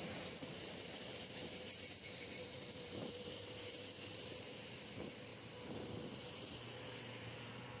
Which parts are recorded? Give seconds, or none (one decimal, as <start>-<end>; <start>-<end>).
5.3-6.4